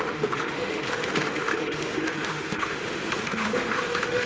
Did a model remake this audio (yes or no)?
yes